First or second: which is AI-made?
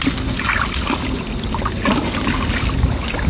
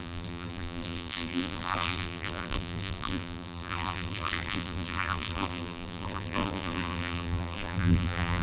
second